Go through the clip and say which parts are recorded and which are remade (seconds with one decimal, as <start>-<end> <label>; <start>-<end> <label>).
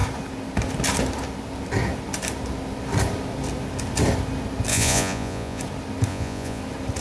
0.0-4.7 recorded; 4.7-5.6 remade; 5.6-6.1 recorded; 6.1-6.6 remade; 6.6-7.0 recorded